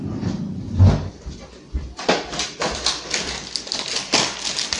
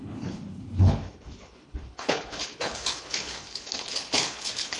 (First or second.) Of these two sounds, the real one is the first